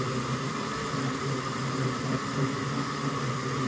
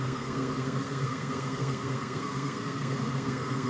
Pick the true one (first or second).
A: first